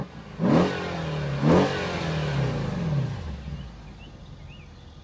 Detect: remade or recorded recorded